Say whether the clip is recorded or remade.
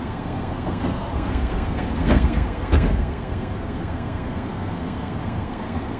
remade